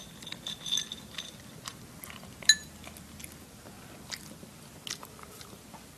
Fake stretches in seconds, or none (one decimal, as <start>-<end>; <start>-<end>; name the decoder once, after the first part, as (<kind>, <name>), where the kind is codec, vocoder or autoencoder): none